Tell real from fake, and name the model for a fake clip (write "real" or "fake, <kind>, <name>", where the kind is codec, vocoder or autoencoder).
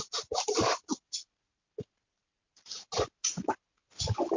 real